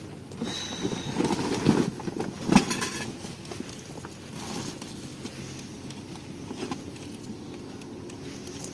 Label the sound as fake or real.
real